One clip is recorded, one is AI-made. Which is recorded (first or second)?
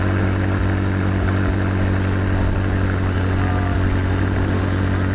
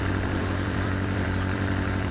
first